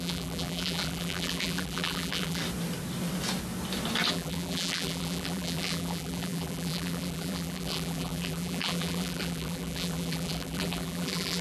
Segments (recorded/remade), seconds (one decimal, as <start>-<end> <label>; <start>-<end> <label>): 0.0-2.4 remade; 2.4-4.1 recorded; 4.1-11.4 remade